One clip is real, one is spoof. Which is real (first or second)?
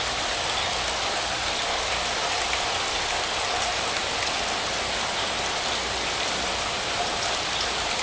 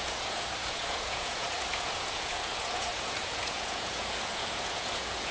first